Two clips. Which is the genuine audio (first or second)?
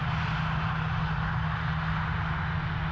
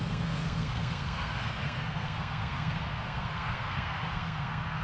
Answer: first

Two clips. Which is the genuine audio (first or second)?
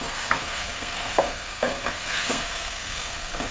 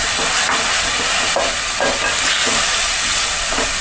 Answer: second